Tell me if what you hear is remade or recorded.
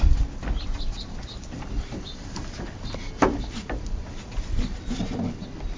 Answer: recorded